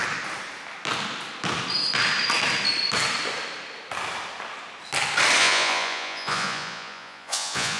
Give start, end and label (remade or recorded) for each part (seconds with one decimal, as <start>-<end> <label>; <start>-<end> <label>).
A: 0.0-5.4 recorded; 5.4-7.8 remade